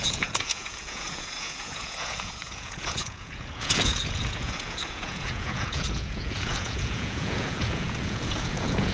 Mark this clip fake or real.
fake